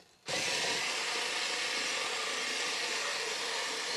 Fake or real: real